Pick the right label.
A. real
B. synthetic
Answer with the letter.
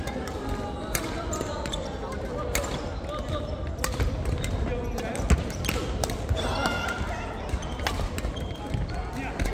A